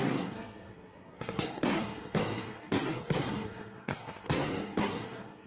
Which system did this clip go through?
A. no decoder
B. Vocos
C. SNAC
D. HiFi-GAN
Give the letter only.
C